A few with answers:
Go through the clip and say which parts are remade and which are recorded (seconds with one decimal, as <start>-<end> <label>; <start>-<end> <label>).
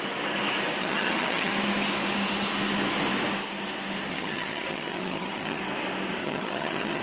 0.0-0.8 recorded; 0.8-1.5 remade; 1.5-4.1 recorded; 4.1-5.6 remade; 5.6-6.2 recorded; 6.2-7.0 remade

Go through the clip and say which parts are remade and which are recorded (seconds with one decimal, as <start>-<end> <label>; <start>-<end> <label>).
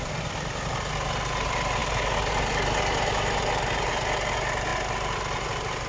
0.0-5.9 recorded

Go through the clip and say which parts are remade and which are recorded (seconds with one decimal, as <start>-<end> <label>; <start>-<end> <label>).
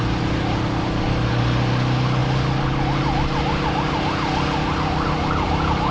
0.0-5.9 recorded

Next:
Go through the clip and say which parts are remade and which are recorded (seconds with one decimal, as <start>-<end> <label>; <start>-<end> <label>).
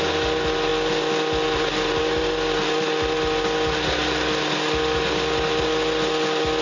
0.0-6.6 recorded